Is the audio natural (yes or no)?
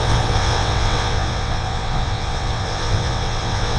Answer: no